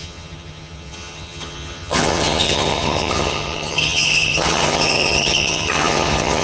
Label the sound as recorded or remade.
remade